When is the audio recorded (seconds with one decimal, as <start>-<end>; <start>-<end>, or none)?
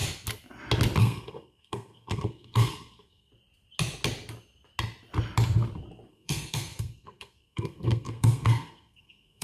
0.0-1.0; 3.3-6.1